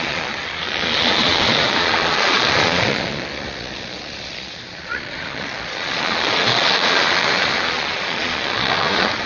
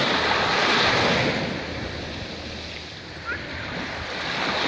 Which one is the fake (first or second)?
first